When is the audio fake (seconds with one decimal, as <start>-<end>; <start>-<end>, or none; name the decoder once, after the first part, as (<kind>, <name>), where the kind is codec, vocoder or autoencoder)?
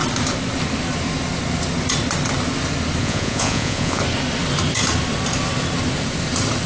3.0-4.0 (vocoder, Vocos)